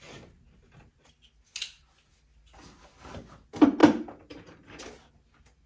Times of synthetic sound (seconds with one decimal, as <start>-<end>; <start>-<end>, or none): none